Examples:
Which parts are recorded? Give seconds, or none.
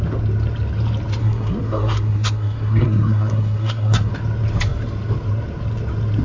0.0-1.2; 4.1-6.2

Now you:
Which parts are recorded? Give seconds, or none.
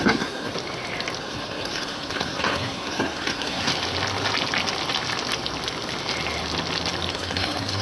0.5-1.2; 3.7-7.1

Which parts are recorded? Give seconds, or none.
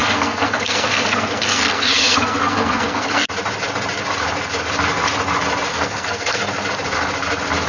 3.3-5.7; 6.4-7.7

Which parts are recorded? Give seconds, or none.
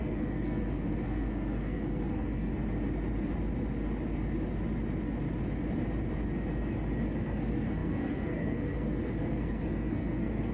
2.5-7.0